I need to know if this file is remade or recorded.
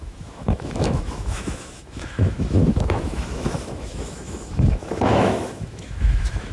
remade